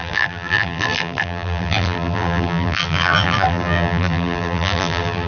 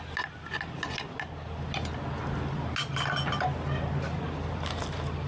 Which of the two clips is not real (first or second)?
first